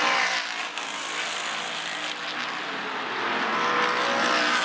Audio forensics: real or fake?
real